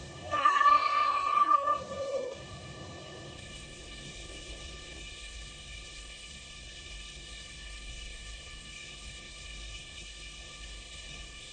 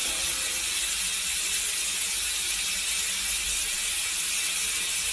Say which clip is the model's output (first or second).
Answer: first